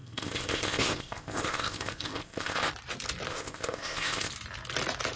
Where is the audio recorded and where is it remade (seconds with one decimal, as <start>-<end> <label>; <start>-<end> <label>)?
0.0-2.7 remade; 2.7-3.3 recorded; 3.3-4.3 remade; 4.3-5.2 recorded